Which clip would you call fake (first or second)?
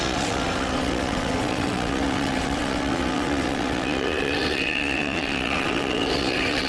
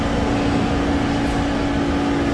first